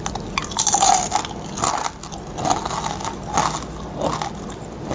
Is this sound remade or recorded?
recorded